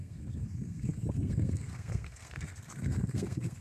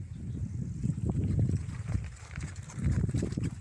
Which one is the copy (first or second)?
first